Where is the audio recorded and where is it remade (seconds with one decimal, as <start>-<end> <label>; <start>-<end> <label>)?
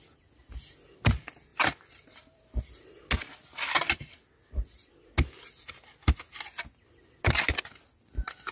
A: 0.0-8.5 recorded